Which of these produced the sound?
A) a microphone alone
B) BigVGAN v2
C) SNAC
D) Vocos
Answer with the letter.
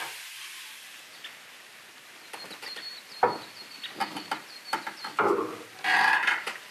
A